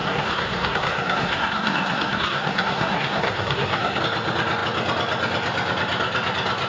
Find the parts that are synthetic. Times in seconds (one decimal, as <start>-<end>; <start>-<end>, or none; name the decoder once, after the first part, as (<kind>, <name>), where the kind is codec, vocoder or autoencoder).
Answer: 0.0-4.0 (codec, SNAC)